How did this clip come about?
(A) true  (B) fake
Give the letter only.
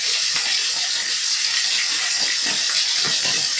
A